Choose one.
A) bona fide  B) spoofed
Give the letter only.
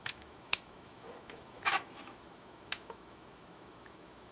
B